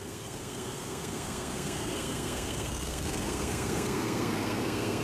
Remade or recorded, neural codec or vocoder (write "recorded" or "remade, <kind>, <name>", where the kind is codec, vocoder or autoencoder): remade, codec, SNAC